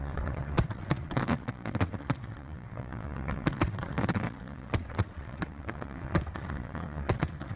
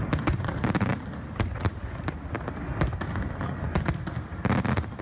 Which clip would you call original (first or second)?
second